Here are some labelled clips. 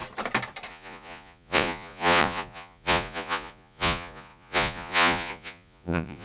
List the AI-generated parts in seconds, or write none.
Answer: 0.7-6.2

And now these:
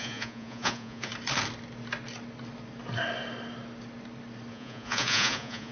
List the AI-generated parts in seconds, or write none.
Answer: 0.0-1.1; 4.5-5.7

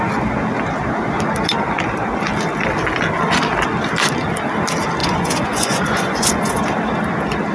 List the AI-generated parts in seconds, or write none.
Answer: 5.0-6.6

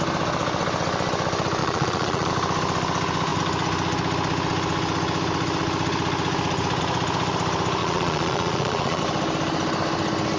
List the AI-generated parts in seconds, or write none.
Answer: 1.6-2.3; 7.8-9.0

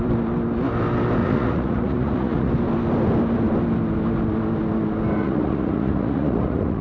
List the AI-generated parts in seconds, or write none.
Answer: 1.2-2.5; 5.2-6.8